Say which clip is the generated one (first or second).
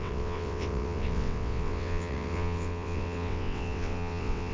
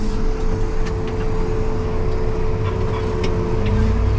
first